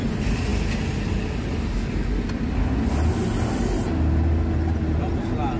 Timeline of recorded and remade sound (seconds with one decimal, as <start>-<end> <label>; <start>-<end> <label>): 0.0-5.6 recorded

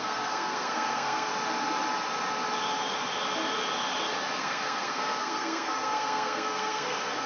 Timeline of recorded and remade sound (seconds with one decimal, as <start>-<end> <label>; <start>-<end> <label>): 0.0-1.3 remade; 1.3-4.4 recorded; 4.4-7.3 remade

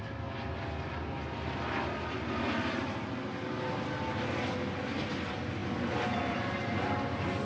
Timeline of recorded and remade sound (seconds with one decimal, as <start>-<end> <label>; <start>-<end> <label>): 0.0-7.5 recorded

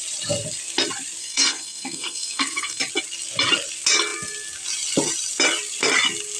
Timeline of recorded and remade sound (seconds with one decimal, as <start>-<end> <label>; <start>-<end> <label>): 0.0-1.2 recorded; 1.2-2.8 remade; 2.8-6.4 recorded

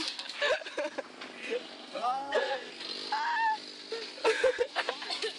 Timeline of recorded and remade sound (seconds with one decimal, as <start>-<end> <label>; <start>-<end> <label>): 0.0-1.8 recorded; 1.8-2.7 remade; 2.7-4.2 recorded; 4.2-4.9 remade; 4.9-5.4 recorded

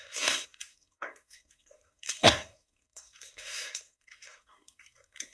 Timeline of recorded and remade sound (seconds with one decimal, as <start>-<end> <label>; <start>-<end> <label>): 0.0-5.3 remade